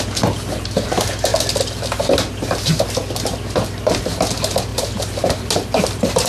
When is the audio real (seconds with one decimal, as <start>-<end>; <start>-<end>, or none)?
0.0-4.7

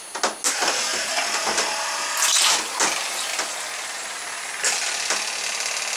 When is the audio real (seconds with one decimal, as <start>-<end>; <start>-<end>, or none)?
0.0-3.3; 4.2-6.0

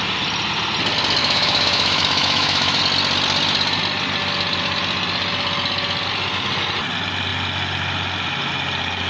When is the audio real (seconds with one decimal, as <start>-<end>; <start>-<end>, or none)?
0.0-1.2; 2.8-9.1

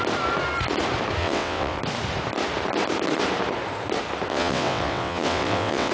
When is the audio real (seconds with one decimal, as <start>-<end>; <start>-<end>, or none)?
0.0-1.2; 1.8-4.3

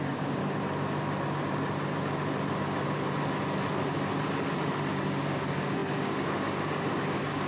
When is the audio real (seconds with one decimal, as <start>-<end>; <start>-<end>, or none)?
0.4-4.9

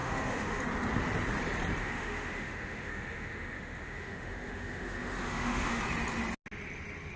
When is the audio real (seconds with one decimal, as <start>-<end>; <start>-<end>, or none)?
0.6-1.8; 5.8-7.2

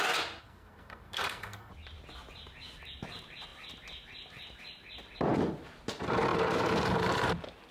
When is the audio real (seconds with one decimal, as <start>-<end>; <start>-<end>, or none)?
0.0-0.4; 1.7-7.7

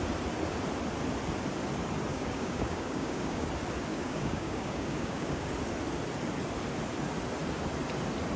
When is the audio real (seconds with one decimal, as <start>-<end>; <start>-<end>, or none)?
0.0-2.1; 3.5-3.9; 5.5-8.4